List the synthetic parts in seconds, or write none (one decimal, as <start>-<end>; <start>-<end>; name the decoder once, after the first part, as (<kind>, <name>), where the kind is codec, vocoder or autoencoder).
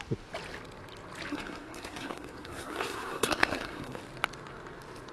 1.3-4.0 (codec, SNAC)